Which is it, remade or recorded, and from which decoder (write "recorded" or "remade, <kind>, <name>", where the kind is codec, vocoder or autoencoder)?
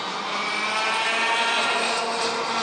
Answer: recorded